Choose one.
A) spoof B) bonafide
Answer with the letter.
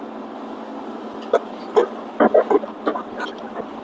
B